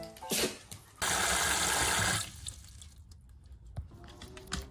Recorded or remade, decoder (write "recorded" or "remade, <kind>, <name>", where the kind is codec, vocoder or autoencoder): recorded